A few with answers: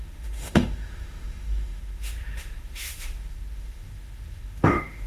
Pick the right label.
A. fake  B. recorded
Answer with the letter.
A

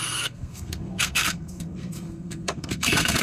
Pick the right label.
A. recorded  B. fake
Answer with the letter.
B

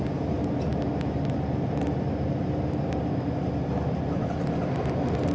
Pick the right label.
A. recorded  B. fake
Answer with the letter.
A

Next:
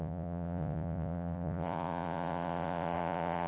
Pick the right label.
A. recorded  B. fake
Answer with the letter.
B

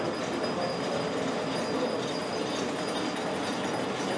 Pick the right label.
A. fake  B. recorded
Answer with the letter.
B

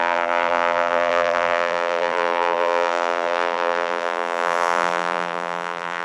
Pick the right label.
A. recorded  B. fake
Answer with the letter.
B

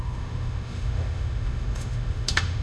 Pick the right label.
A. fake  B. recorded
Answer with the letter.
A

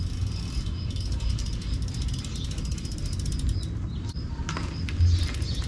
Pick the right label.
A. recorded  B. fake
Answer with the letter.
A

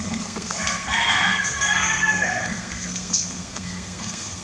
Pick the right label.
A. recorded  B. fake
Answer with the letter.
B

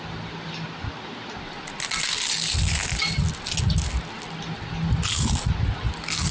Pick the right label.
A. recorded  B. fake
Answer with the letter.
A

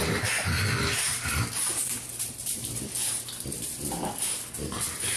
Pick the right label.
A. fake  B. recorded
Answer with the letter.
B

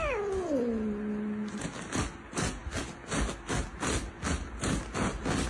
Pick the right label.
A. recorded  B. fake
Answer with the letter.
A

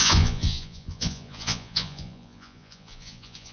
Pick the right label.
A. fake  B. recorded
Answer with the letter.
A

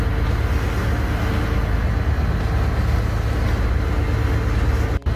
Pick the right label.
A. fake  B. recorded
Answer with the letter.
B